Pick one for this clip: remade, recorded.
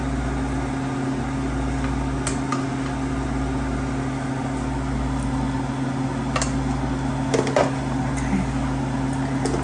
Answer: recorded